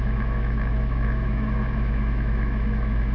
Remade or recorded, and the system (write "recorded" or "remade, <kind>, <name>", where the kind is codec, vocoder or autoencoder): remade, autoencoder, DAC-VAE